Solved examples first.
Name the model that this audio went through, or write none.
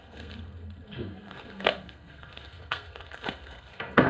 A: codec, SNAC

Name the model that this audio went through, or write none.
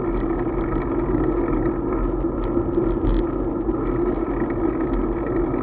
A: none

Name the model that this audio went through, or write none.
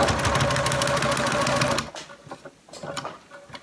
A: none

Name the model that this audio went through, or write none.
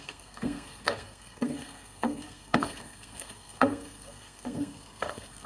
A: codec, SNAC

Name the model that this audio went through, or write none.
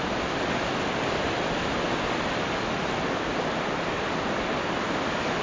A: none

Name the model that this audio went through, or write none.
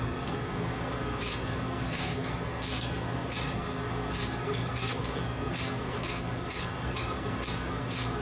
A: codec, SNAC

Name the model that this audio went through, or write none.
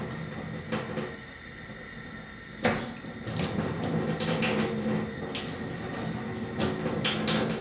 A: none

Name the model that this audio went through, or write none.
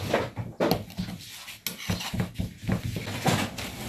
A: none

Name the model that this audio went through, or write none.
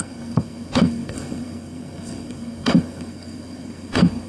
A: codec, SNAC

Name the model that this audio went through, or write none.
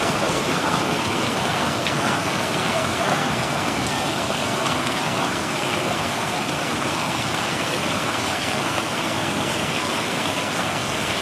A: codec, SNAC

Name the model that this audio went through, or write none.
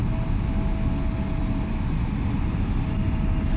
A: none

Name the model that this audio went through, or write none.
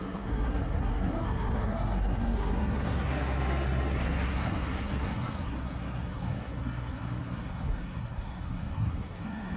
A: codec, SNAC